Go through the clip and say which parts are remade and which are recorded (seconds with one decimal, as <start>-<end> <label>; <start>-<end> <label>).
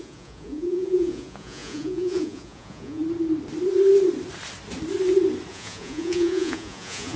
0.0-3.0 remade; 3.0-5.5 recorded; 5.5-7.2 remade